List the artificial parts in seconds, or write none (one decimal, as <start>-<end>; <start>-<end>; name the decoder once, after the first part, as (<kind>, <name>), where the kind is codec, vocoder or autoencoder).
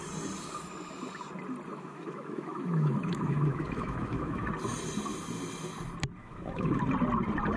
1.7-4.5 (autoencoder, DAC-VAE); 6.2-6.8